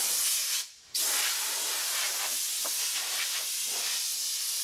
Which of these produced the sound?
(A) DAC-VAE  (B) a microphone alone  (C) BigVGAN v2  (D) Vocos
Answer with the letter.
B